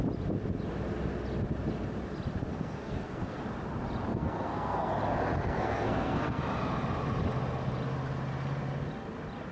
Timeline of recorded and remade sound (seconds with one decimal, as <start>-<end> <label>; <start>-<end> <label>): 0.0-2.5 recorded; 2.5-3.4 remade; 3.4-4.1 recorded; 4.1-4.9 remade; 4.9-5.4 recorded; 5.4-6.4 remade; 6.4-9.5 recorded